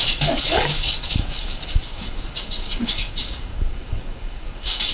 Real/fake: fake